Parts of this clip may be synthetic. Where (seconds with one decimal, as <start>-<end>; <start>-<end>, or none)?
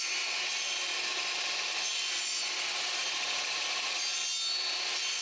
none